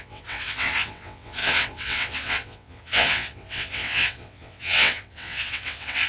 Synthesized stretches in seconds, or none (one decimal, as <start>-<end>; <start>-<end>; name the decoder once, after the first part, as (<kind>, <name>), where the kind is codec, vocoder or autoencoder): 0.0-6.1 (vocoder, WaveNeXt)